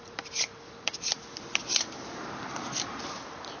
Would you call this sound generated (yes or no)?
yes